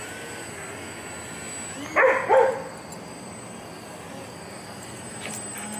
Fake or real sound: real